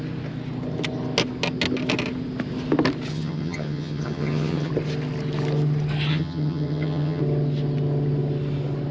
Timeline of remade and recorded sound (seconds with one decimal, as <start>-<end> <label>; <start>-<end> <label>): 0.0-3.1 recorded; 3.1-4.7 remade; 4.7-6.1 recorded; 6.1-7.2 remade; 7.2-8.9 recorded